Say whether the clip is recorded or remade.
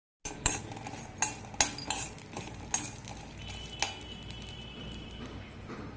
recorded